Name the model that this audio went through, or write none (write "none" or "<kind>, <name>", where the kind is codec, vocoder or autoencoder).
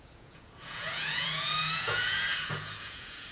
vocoder, Vocos